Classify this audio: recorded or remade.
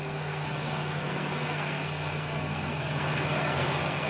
remade